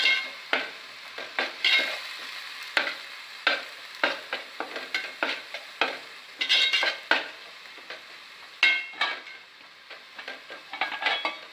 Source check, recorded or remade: recorded